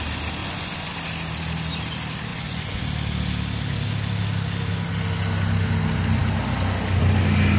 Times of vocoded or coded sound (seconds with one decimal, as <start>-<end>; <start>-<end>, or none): 0.4-0.9; 2.3-2.8

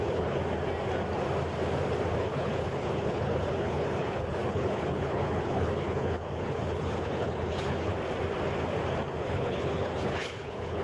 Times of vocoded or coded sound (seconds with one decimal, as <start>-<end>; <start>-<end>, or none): 0.0-0.4; 2.2-7.9; 9.2-10.8

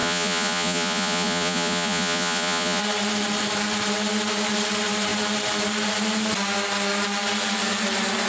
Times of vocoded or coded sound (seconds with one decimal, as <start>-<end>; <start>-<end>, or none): 0.0-2.8

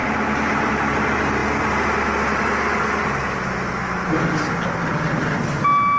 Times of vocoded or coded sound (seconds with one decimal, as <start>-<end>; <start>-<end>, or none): none

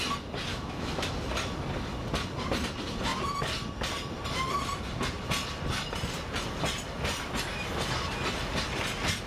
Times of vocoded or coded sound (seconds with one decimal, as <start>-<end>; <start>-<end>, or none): 0.5-1.1

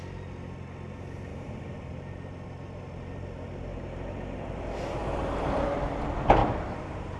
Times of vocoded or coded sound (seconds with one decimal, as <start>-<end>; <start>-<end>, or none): 1.3-2.8; 3.7-4.6; 5.0-5.8; 6.4-7.2

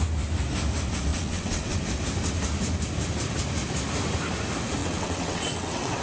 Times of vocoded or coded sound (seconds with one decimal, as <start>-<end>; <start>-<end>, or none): 1.1-1.8; 4.8-6.0

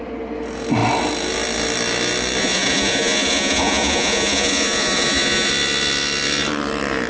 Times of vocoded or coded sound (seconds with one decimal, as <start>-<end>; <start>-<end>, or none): 2.4-5.5